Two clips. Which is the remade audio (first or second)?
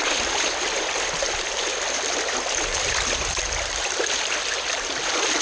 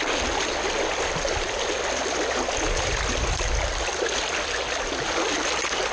first